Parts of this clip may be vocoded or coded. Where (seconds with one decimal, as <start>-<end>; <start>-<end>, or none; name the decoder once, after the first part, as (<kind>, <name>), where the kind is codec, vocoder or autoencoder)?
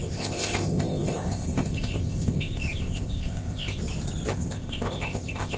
0.0-3.8 (codec, ZipCodec); 4.3-5.6